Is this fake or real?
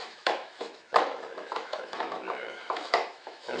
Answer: fake